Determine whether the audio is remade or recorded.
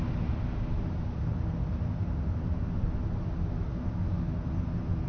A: recorded